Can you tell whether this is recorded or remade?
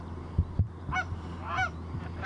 remade